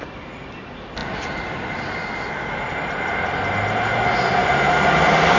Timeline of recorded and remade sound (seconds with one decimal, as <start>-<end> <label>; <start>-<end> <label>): 0.0-5.4 recorded